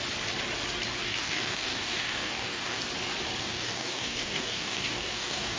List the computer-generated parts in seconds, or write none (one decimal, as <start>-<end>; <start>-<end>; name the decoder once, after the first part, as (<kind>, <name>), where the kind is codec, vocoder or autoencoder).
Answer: 1.0-2.8 (codec, DAC); 3.4-5.6